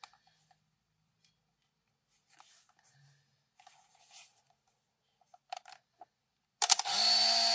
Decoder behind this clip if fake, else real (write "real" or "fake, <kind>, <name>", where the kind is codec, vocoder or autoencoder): real